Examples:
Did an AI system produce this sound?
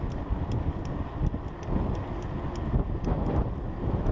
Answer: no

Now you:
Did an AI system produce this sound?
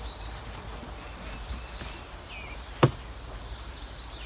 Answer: no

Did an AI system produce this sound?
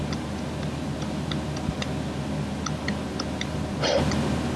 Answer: no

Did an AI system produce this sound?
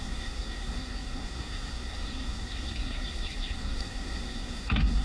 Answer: yes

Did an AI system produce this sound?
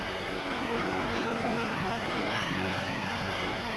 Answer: yes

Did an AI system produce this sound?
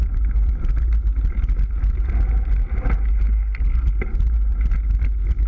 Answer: no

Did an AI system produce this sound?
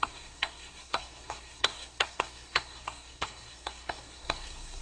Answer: yes